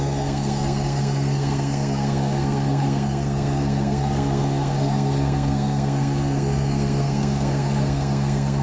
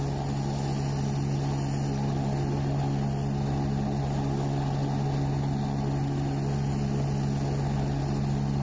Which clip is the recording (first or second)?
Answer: second